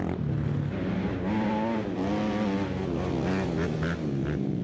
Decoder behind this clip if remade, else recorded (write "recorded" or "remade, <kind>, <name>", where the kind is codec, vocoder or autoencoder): recorded